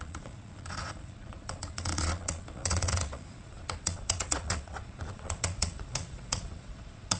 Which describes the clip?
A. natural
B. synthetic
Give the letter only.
B